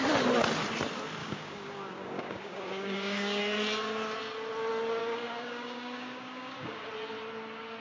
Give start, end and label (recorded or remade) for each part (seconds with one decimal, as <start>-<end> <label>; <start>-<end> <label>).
0.0-1.2 recorded; 1.2-3.4 remade; 3.4-5.0 recorded; 5.0-6.9 remade; 6.9-7.8 recorded